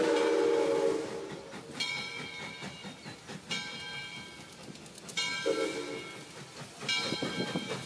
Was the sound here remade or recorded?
recorded